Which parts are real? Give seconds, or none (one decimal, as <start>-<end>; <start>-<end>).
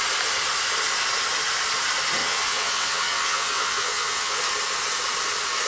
0.0-2.2; 4.4-5.7